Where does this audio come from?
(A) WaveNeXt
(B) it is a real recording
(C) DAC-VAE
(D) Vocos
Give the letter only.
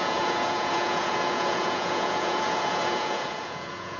D